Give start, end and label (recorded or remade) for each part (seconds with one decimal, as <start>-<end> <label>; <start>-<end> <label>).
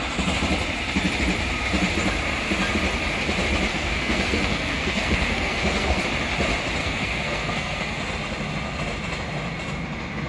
0.0-3.7 recorded; 3.7-6.0 remade; 6.0-6.8 recorded; 6.8-8.0 remade; 8.0-10.3 recorded